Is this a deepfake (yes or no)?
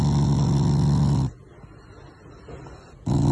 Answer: no